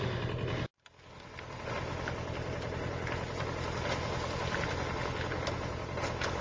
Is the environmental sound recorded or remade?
recorded